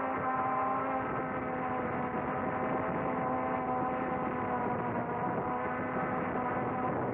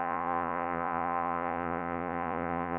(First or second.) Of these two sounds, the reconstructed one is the second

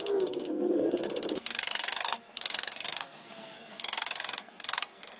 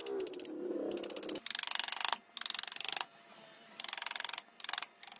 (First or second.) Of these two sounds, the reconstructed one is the first